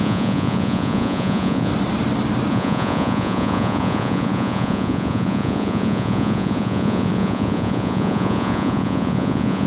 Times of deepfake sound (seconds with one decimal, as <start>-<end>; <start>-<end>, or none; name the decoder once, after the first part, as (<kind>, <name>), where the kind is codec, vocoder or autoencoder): 0.0-1.7 (vocoder, Vocos); 2.5-9.7